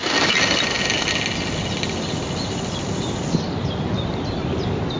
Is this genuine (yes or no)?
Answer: yes